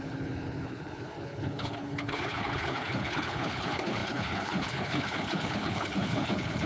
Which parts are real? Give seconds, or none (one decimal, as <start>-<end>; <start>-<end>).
none